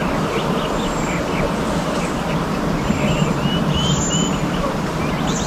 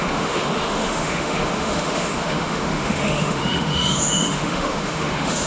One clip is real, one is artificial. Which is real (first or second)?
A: first